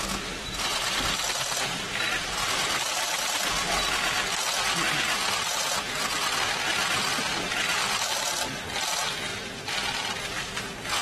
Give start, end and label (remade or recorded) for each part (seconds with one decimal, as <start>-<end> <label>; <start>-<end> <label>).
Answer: 0.0-11.0 recorded